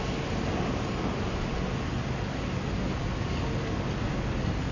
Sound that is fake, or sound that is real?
real